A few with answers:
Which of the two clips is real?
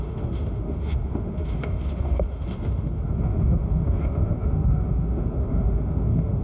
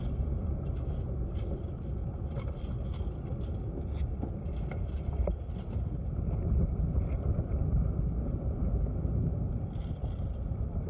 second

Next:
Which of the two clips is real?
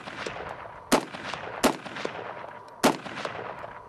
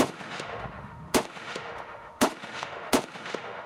first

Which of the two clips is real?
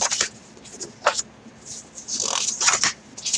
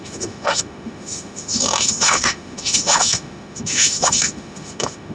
first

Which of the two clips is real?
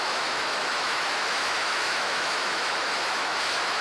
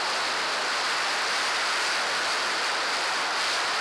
second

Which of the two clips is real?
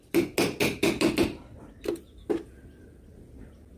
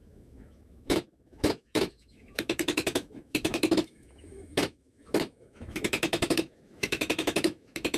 first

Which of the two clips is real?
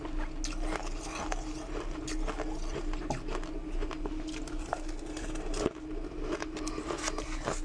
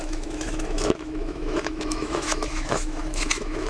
first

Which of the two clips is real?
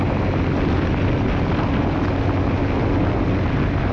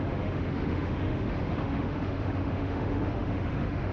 first